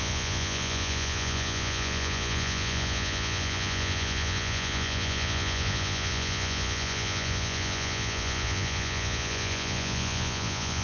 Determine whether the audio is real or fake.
fake